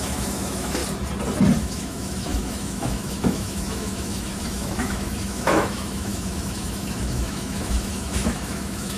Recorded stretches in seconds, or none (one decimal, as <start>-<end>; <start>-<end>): 0.8-1.6